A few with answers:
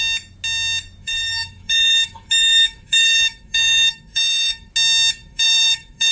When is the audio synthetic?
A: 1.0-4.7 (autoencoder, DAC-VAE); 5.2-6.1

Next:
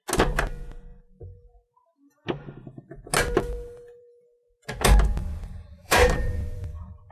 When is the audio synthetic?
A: 5.2-7.1 (vocoder, BigVGAN v2)

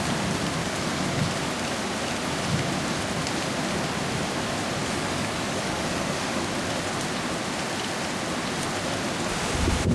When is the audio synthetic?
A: 0.6-1.2 (codec, DAC); 4.8-6.5

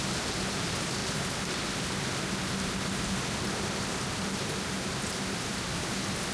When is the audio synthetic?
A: 1.0-1.5 (vocoder, BigVGAN v2); 3.9-5.5

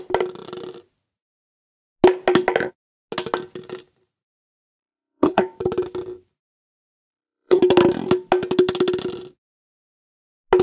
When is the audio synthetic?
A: 4.3-5.4 (codec, SNAC); 7.1-7.6

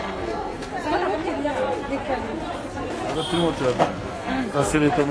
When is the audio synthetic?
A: 0.0-0.7 (codec, SNAC); 3.8-5.1

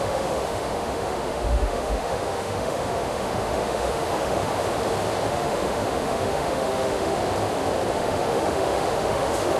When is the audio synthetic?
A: 0.0-4.5 (autoencoder, DAC-VAE); 5.3-7.2; 7.9-9.6

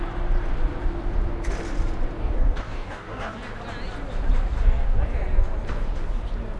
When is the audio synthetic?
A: 2.2-3.3 (codec, DAC)